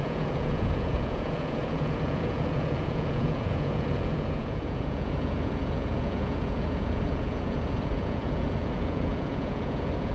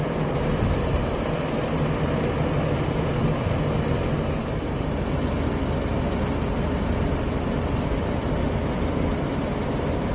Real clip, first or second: second